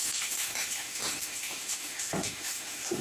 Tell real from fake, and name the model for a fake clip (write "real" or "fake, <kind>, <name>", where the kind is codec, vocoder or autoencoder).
fake, autoencoder, DAC-VAE